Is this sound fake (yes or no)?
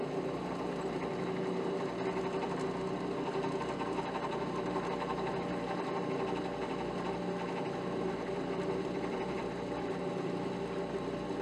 no